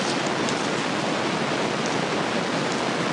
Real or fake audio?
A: real